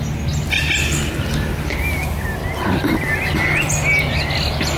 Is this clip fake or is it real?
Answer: real